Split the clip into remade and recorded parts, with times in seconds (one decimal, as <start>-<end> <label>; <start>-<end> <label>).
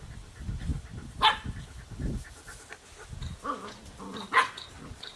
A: 0.0-5.2 recorded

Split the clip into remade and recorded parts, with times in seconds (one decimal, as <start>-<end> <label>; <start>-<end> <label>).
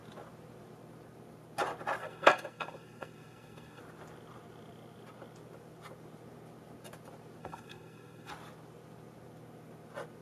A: 0.0-2.0 recorded; 2.0-3.8 remade; 3.8-7.4 recorded; 7.4-8.3 remade; 8.3-10.2 recorded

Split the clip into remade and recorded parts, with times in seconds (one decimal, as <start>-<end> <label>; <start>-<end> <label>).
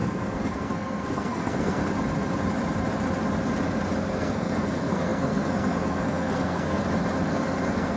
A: 0.0-1.8 remade; 1.8-4.1 recorded; 4.1-6.8 remade; 6.8-7.3 recorded; 7.3-8.0 remade